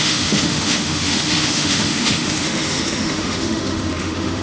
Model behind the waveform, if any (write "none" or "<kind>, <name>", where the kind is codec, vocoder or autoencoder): autoencoder, DAC-VAE